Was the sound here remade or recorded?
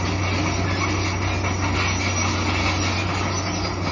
recorded